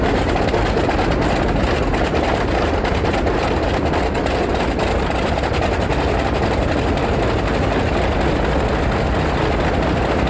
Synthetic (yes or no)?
no